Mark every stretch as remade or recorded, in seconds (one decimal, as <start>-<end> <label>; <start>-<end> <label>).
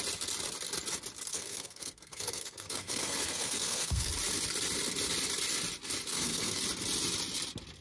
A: 0.0-1.3 recorded; 1.3-4.1 remade; 4.1-6.1 recorded; 6.1-6.6 remade; 6.6-7.8 recorded